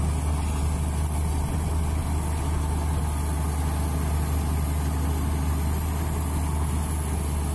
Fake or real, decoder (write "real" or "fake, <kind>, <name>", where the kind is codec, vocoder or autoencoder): real